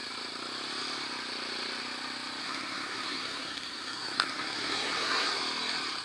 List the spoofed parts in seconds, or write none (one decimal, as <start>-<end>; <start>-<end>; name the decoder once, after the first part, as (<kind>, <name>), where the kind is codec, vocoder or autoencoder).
2.4-5.4 (codec, SNAC)